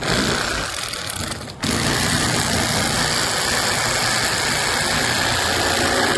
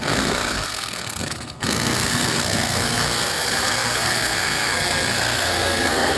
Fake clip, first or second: second